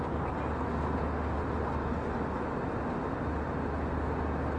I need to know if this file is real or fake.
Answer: real